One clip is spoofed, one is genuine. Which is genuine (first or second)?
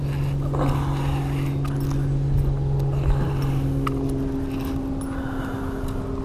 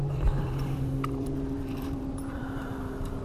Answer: first